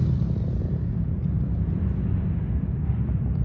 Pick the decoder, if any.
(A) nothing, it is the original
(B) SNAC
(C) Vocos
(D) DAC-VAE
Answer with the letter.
A